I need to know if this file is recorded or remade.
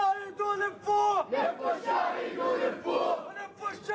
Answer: recorded